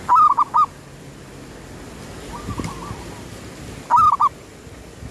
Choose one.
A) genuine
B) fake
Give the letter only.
A